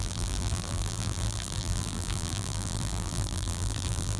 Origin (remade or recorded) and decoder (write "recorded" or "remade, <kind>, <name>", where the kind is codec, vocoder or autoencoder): remade, vocoder, BigVGAN v2